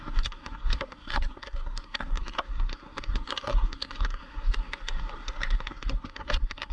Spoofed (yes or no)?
yes